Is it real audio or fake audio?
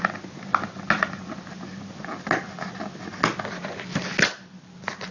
real